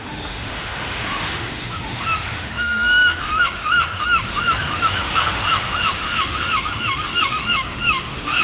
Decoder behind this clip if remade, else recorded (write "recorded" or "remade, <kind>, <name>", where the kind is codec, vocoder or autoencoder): remade, autoencoder, DAC-VAE